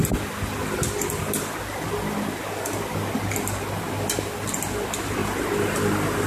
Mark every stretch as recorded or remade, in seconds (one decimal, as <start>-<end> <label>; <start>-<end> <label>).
0.0-5.2 recorded; 5.2-6.3 remade